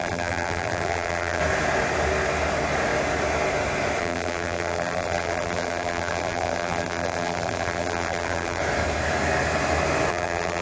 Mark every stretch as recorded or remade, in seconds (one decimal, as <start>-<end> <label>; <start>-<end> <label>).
0.0-1.4 remade; 1.4-4.0 recorded; 4.0-8.6 remade; 8.6-10.1 recorded; 10.1-10.6 remade